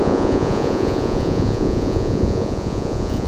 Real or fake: fake